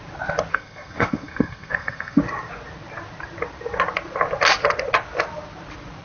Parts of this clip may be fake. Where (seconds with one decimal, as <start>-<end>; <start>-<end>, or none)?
0.5-2.2